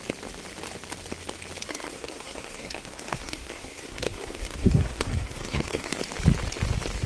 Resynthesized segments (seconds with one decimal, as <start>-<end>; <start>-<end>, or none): 1.7-6.0